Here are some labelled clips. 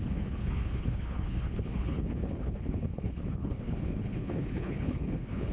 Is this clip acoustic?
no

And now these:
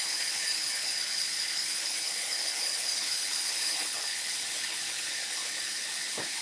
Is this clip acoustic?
no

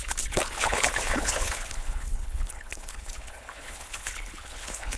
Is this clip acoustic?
no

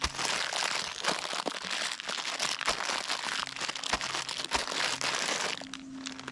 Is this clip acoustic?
yes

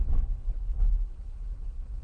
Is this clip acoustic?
no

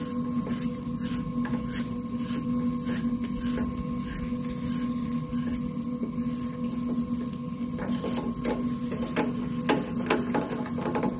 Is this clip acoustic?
yes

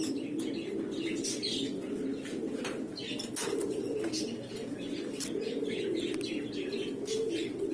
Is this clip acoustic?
yes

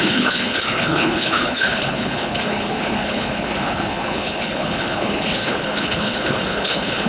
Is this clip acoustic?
no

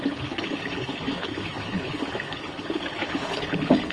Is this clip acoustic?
no